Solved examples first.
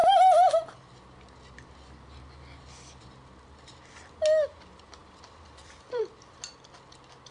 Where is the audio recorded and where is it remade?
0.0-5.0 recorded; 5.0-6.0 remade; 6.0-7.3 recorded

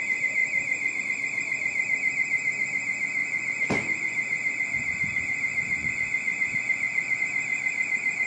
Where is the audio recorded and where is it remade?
0.0-3.2 recorded; 3.2-7.2 remade; 7.2-8.3 recorded

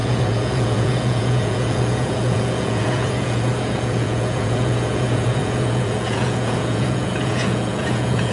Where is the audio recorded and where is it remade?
0.0-8.3 remade

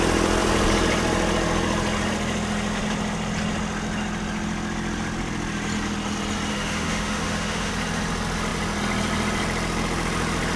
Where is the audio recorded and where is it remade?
0.0-6.5 recorded; 6.5-7.7 remade; 7.7-10.6 recorded

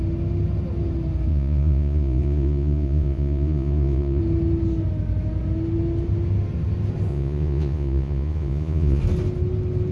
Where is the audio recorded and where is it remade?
0.0-1.3 recorded; 1.3-4.2 remade; 4.2-7.1 recorded; 7.1-9.0 remade; 9.0-9.9 recorded

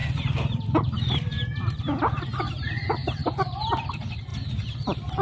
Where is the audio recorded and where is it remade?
0.0-1.8 remade; 1.8-3.2 recorded; 3.2-3.9 remade; 3.9-5.2 recorded

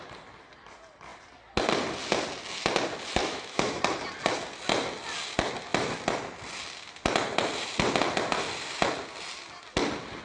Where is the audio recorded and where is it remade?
0.0-3.2 recorded; 3.2-3.8 remade; 3.8-10.2 recorded

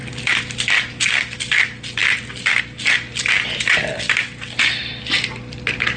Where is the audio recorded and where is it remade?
0.0-6.0 recorded